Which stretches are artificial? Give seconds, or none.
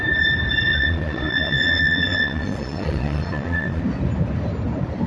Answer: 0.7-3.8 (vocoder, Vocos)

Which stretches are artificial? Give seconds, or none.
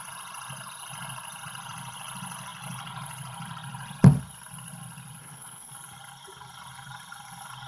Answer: 5.2-5.7 (codec, HILCodec)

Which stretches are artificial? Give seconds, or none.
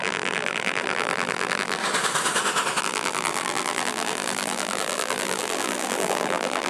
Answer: 0.0-1.8 (vocoder, BigVGAN v2); 2.8-6.7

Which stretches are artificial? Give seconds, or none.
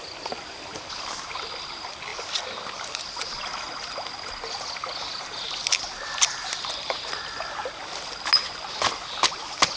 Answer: none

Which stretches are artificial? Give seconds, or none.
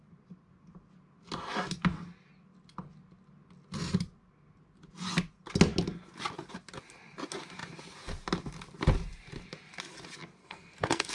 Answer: 10.4-11.1 (codec, SNAC)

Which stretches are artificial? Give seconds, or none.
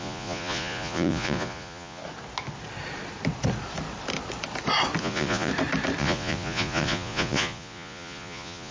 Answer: 0.0-2.0 (vocoder, Vocos); 5.0-5.5; 6.0-8.7